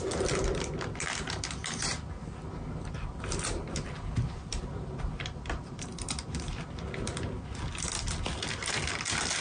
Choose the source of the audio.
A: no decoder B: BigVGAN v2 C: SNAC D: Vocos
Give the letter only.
A